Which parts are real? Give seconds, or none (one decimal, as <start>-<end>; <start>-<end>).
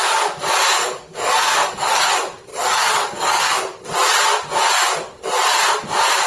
0.0-0.8; 2.1-2.5; 3.8-6.3